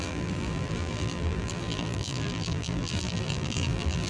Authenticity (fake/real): fake